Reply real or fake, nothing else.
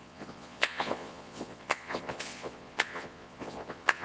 fake